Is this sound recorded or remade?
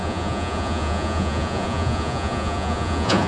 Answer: remade